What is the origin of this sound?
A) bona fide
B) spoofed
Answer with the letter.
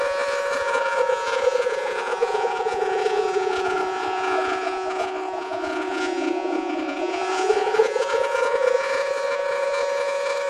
B